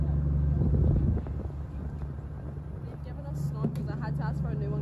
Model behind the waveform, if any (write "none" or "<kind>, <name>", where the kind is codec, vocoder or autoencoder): none